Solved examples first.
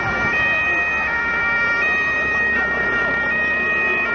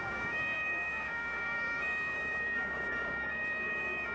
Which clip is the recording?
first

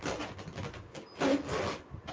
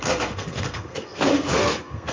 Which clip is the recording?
first